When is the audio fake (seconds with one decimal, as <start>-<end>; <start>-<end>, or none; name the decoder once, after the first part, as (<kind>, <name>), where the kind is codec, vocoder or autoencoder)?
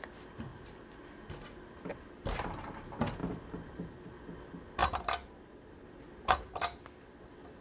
none